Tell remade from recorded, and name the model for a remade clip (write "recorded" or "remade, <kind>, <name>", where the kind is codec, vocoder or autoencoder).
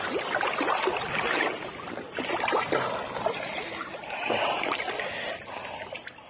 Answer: recorded